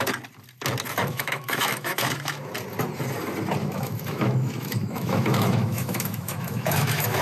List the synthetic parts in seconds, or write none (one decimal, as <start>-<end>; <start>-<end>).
1.0-2.5; 3.6-7.2